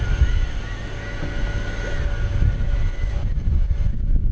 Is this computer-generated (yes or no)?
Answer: no